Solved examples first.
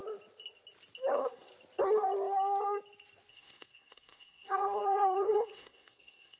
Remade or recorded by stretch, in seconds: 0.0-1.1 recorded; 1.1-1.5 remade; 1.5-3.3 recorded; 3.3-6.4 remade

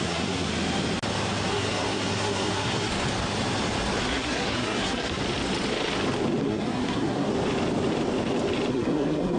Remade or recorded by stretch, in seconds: 0.0-0.5 remade; 0.5-1.5 recorded; 1.5-2.9 remade; 2.9-4.0 recorded; 4.0-5.2 remade; 5.2-6.4 recorded; 6.4-7.3 remade; 7.3-8.7 recorded; 8.7-9.4 remade

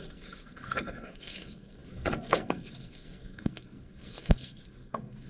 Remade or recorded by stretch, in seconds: 0.0-5.3 remade